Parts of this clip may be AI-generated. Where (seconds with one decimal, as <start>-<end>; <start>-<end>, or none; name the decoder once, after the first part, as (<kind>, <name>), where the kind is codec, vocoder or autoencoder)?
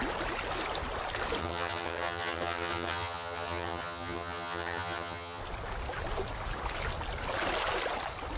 1.4-5.4 (vocoder, HiFi-GAN)